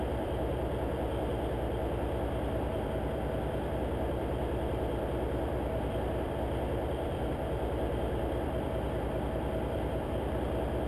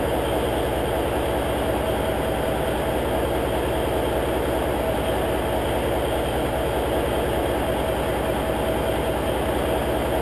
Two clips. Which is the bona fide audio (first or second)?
second